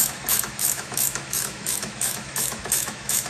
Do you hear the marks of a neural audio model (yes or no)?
yes